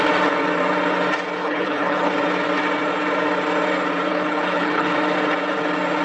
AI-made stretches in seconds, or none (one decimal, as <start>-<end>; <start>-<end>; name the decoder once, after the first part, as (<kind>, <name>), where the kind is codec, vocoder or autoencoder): 1.4-2.1 (codec, HILCodec); 4.1-4.9